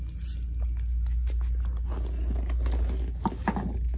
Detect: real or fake real